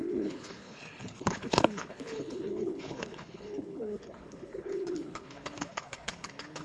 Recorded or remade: remade